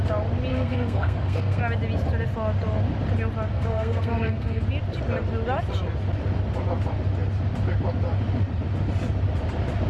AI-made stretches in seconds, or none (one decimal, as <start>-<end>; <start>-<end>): 0.5-1.6; 3.5-4.6